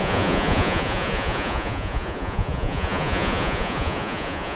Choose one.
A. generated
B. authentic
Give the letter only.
A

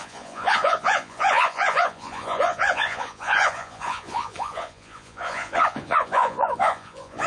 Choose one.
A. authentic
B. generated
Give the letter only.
B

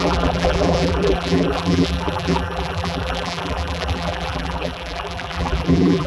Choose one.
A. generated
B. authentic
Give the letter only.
A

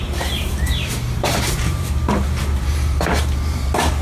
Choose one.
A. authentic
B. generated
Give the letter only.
B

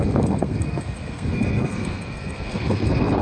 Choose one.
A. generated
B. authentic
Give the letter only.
A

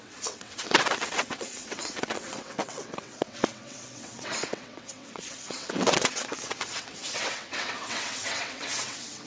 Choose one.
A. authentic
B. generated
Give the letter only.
B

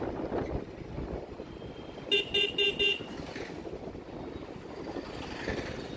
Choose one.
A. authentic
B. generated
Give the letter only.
A